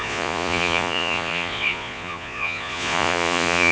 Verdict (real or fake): fake